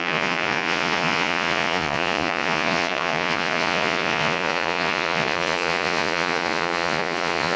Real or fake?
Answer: fake